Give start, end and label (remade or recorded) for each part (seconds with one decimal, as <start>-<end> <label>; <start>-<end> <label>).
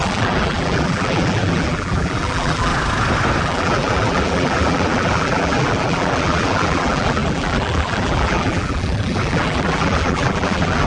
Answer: 0.0-2.7 remade; 2.7-3.4 recorded; 3.4-10.9 remade